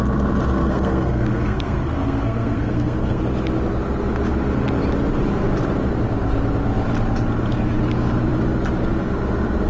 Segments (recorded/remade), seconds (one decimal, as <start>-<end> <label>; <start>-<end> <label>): 0.0-0.6 recorded; 0.6-3.2 remade; 3.2-9.7 recorded